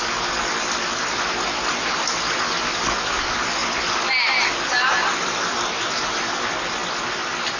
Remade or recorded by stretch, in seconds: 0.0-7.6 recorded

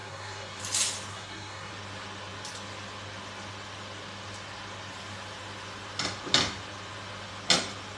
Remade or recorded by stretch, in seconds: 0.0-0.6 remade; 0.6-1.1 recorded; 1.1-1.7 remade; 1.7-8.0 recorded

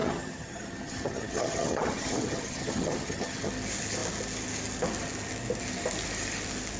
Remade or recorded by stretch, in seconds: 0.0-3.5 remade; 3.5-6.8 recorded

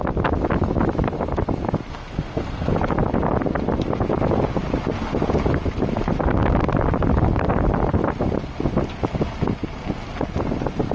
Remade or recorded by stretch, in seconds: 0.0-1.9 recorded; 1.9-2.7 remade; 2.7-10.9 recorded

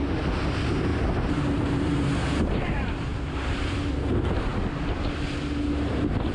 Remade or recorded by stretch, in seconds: 0.0-0.9 recorded; 0.9-2.6 remade; 2.6-3.1 recorded; 3.1-3.7 remade; 3.7-6.3 recorded

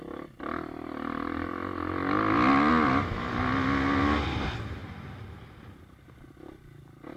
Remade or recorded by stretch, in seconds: 0.0-4.8 recorded; 4.8-5.6 remade; 5.6-7.2 recorded

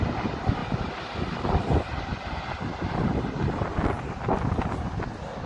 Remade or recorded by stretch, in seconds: 0.0-5.5 recorded

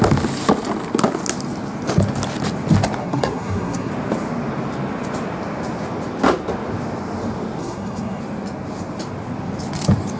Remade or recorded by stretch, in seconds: 0.0-3.0 recorded; 3.0-3.9 remade; 3.9-7.6 recorded; 7.6-8.2 remade; 8.2-10.2 recorded